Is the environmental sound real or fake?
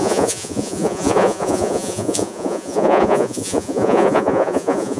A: fake